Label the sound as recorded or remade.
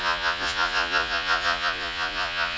remade